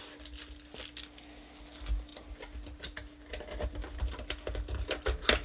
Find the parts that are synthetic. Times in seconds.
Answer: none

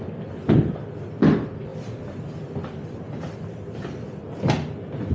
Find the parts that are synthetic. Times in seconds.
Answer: none

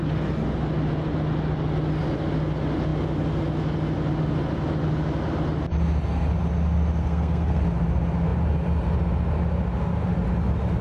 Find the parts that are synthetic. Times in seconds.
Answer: 7.0-7.6 (codec, SNAC)